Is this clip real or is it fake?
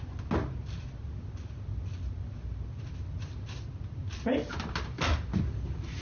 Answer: real